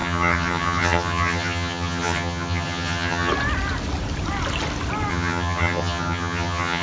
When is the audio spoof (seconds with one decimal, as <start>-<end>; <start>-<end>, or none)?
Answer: 0.0-3.3; 5.1-6.8